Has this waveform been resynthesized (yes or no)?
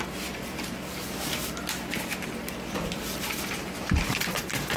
yes